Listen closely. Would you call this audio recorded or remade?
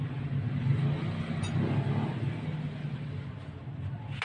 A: recorded